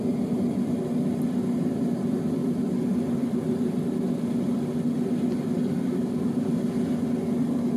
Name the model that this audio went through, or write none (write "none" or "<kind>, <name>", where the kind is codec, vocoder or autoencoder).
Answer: none